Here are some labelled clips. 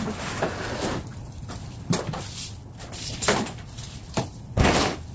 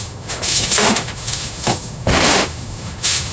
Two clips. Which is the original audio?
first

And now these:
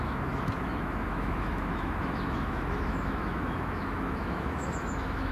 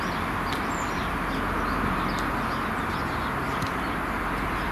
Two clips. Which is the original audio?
second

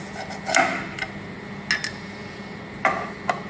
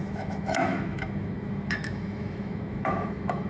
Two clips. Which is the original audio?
first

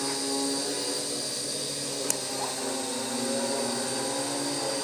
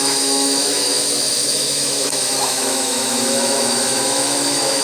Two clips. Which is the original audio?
first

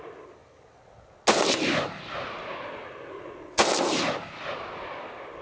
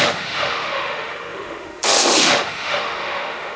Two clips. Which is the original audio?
first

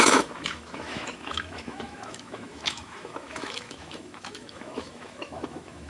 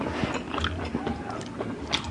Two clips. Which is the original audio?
second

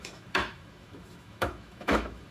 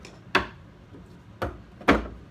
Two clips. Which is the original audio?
second